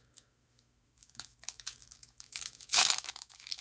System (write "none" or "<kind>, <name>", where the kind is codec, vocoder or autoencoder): autoencoder, DAC-VAE